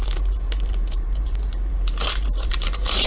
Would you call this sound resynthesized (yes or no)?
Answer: yes